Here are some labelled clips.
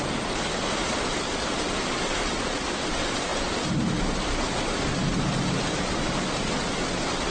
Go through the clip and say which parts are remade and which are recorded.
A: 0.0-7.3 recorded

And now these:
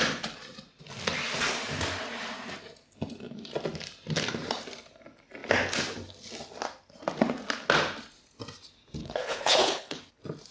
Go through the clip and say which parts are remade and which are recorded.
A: 0.0-9.0 recorded; 9.0-10.1 remade; 10.1-10.5 recorded

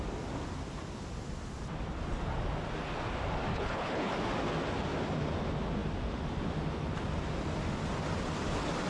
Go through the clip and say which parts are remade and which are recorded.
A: 0.0-3.5 recorded; 3.5-4.1 remade; 4.1-8.9 recorded